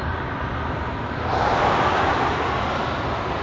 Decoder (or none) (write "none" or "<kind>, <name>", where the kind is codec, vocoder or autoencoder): none